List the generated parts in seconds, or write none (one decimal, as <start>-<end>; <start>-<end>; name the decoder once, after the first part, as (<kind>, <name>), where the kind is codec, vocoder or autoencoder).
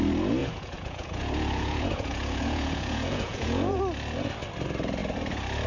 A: 0.4-3.8 (vocoder, Vocos)